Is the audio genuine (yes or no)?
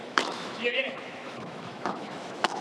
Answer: no